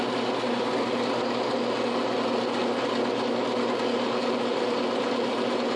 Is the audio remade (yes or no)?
no